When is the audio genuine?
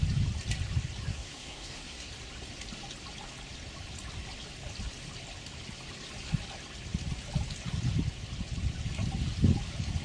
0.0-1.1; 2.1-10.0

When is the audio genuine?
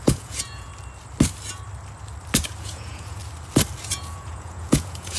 0.7-2.6; 3.2-3.9